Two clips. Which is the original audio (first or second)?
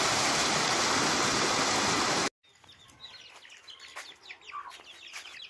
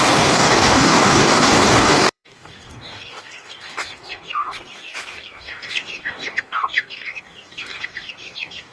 first